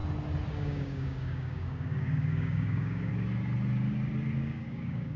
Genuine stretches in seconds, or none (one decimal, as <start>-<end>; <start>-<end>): 0.0-0.5; 3.1-4.4